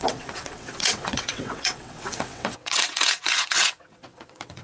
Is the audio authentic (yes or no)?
no